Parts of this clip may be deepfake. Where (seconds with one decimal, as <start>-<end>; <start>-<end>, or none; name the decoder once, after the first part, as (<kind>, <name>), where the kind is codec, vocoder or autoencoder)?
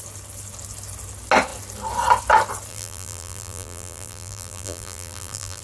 2.7-5.6 (vocoder, BigVGAN v2)